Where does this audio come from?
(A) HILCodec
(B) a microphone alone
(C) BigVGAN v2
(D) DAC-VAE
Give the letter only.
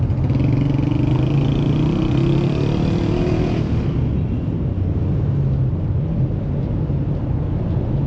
B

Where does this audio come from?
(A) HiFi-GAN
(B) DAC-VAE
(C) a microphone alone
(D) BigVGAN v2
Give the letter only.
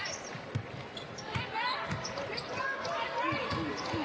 C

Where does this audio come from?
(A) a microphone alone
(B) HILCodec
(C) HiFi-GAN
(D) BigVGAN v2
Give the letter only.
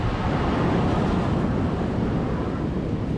D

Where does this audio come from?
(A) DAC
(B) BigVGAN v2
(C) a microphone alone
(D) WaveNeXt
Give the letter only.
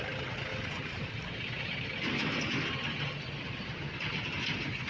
C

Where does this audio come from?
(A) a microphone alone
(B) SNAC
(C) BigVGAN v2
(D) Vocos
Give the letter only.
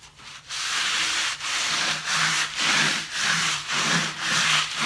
C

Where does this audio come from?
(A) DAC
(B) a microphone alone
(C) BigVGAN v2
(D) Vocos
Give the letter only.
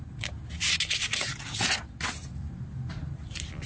B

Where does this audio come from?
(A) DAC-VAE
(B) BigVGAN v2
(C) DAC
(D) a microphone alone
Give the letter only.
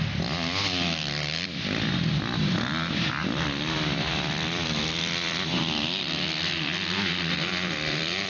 B